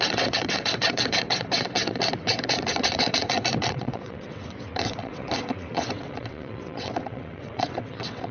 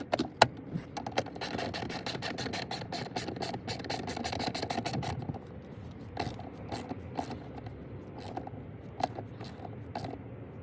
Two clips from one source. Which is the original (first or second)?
second